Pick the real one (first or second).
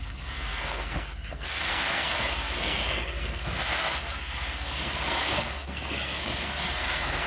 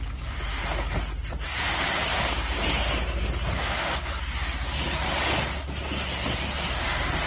second